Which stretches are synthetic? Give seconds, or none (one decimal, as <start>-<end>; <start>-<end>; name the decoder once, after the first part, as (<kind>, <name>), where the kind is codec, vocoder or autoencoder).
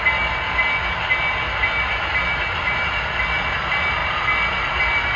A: none